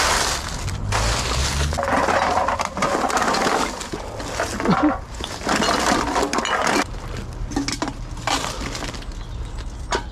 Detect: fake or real real